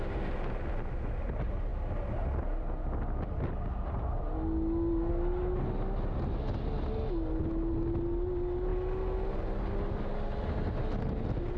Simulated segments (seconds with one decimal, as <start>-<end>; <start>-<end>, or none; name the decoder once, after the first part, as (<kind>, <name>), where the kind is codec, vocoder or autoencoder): none